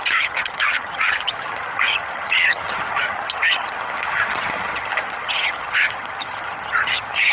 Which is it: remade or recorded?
remade